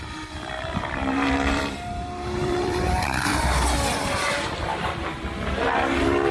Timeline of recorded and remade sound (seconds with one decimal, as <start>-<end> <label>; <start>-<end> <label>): 0.0-3.3 remade; 3.3-4.2 recorded; 4.2-6.3 remade